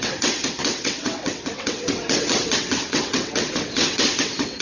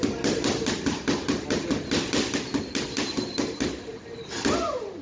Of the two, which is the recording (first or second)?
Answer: second